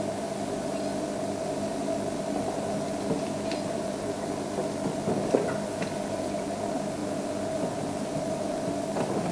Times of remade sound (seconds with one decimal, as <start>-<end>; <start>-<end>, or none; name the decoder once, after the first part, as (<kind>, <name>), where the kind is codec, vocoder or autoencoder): none